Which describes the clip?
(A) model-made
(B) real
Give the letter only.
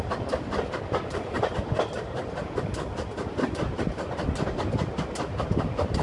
B